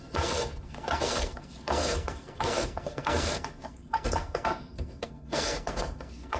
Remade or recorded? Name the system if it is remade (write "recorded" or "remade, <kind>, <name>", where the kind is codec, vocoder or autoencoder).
remade, codec, SNAC